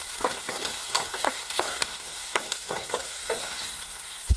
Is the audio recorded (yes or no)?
no